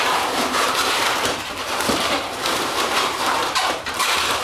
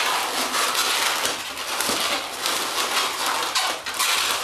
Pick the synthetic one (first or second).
first